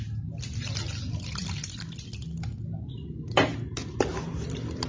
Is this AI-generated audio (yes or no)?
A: no